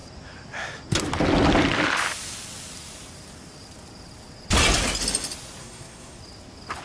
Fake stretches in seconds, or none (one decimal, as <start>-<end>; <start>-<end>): 5.6-6.2